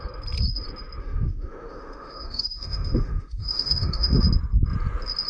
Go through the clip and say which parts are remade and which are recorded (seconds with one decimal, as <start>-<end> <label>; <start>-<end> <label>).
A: 0.0-1.0 recorded; 1.0-4.2 remade; 4.2-5.3 recorded